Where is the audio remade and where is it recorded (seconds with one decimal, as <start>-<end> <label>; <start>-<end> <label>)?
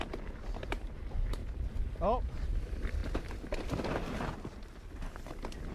0.0-1.4 remade; 1.4-2.6 recorded; 2.6-3.0 remade; 3.0-5.2 recorded; 5.2-5.7 remade